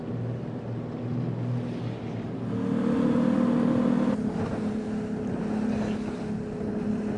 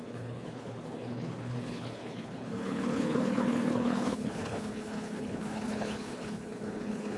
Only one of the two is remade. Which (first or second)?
second